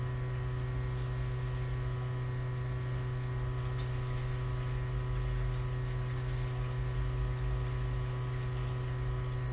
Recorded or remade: recorded